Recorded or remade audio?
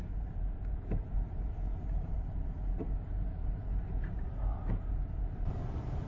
remade